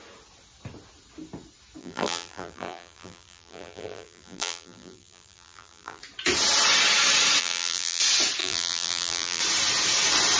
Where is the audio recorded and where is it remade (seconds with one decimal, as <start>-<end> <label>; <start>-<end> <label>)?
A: 0.0-1.8 recorded; 1.8-6.0 remade; 6.0-7.4 recorded; 7.4-8.0 remade; 8.0-8.4 recorded; 8.4-9.4 remade; 9.4-10.4 recorded